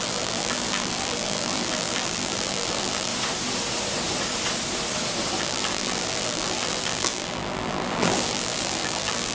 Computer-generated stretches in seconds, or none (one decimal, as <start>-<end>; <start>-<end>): 0.0-3.1; 5.4-9.3